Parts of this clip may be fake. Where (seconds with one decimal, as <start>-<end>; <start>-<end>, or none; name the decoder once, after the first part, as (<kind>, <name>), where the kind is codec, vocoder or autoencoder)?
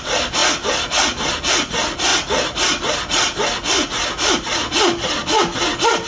none